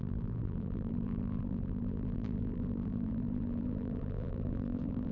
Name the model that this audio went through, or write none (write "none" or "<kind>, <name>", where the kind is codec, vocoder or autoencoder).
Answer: vocoder, BigVGAN v2